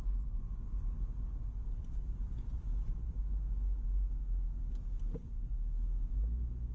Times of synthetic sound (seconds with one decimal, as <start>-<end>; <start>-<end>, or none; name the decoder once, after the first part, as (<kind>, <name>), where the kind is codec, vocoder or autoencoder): 1.8-3.1 (vocoder, BigVGAN v2)